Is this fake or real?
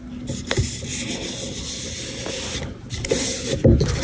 real